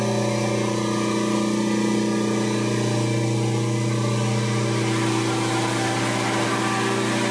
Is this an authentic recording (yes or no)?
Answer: yes